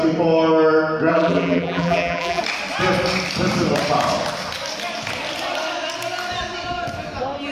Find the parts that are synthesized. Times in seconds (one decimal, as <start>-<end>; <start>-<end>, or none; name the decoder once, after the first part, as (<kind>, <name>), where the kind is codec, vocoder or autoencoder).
1.1-2.4 (vocoder, BigVGAN v2)

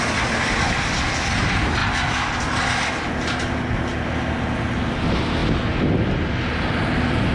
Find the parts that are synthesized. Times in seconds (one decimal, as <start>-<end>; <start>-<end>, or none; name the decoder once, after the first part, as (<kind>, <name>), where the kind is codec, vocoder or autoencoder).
none

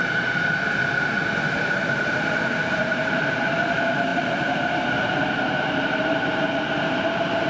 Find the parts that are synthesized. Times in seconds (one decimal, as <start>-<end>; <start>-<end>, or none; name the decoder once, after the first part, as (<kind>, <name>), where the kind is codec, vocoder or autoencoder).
0.0-7.5 (vocoder, BigVGAN v2)

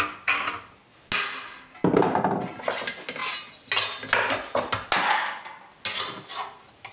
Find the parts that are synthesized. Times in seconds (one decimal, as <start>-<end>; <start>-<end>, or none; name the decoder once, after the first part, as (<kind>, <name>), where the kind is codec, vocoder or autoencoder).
none

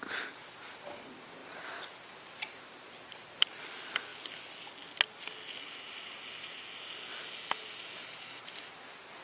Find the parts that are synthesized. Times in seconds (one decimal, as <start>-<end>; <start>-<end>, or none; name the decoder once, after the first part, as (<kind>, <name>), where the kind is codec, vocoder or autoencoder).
1.4-3.6 (vocoder, BigVGAN v2)